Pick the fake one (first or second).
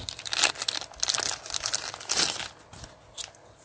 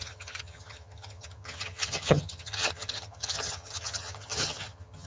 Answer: second